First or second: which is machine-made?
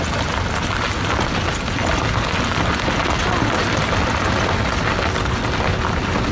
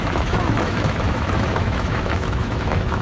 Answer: second